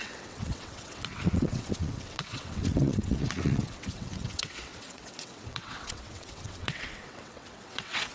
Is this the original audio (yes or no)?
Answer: no